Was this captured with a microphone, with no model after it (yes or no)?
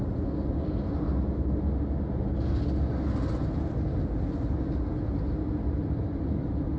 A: yes